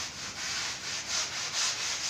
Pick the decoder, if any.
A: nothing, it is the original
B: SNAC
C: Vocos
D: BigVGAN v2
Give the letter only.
A